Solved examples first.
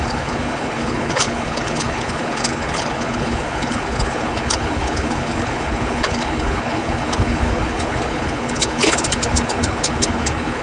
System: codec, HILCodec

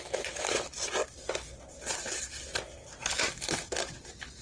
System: none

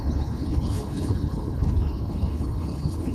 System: codec, HILCodec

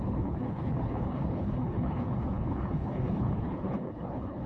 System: codec, HILCodec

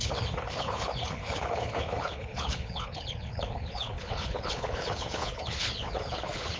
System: codec, HILCodec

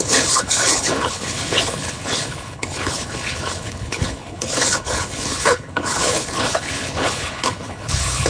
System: codec, HILCodec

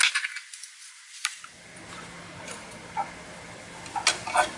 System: none